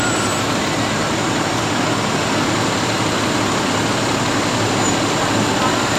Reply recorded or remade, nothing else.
recorded